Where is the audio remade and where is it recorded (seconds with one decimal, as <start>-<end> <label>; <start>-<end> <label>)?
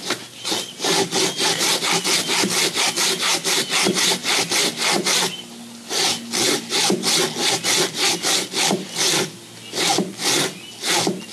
0.0-11.3 recorded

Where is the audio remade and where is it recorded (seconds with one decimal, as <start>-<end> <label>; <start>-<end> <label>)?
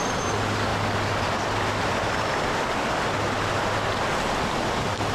0.0-5.1 recorded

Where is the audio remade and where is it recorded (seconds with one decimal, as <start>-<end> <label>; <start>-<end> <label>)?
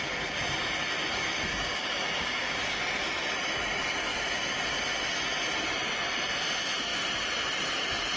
0.0-1.5 recorded; 1.5-2.8 remade; 2.8-8.2 recorded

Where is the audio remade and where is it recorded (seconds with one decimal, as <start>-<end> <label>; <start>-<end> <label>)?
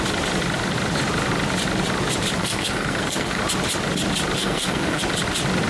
0.0-2.4 recorded; 2.4-3.4 remade; 3.4-4.4 recorded; 4.4-5.0 remade; 5.0-5.7 recorded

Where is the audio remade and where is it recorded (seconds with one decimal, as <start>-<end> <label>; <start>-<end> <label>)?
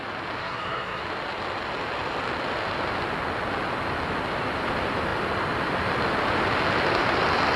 0.0-0.4 recorded; 0.4-1.0 remade; 1.0-7.6 recorded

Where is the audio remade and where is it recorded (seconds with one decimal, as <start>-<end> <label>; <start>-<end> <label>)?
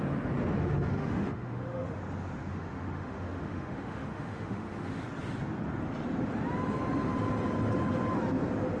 0.0-0.6 recorded; 0.6-2.0 remade; 2.0-2.5 recorded; 2.5-5.0 remade; 5.0-8.8 recorded